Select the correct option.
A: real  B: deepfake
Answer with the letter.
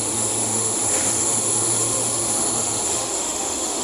B